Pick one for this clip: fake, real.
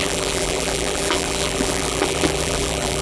fake